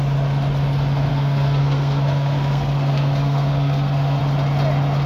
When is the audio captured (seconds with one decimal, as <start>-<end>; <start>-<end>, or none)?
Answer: 0.0-1.1; 4.2-5.1